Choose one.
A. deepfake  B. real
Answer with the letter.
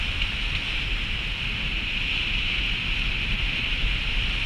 B